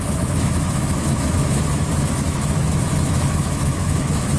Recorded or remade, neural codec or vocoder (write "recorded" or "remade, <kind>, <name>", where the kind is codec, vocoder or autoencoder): remade, autoencoder, DAC-VAE